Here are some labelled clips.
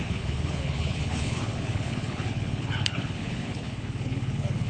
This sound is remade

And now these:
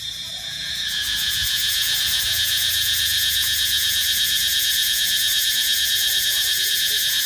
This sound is remade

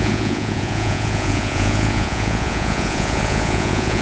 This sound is remade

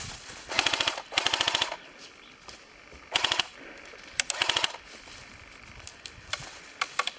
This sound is recorded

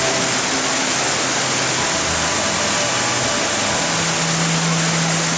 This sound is recorded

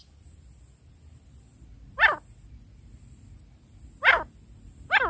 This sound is recorded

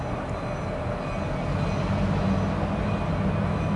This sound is recorded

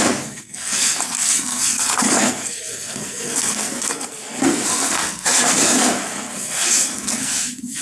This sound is remade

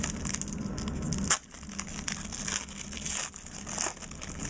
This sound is recorded